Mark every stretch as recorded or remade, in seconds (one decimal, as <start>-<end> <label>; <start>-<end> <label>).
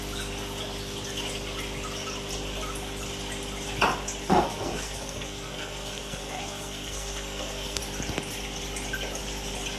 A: 0.0-4.3 recorded; 4.3-7.8 remade; 7.8-9.8 recorded